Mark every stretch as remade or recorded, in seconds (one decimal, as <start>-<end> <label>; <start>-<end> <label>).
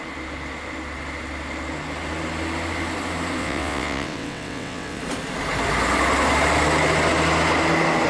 0.0-3.4 recorded; 3.4-5.0 remade; 5.0-8.1 recorded